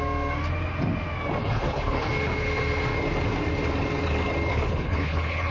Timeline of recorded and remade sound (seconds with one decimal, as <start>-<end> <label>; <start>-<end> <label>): 0.0-1.4 recorded; 1.4-2.1 remade; 2.1-4.5 recorded; 4.5-5.5 remade